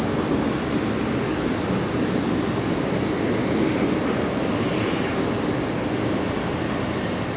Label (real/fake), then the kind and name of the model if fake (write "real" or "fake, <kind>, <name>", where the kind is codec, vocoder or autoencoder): real